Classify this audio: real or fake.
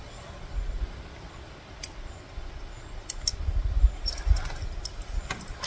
real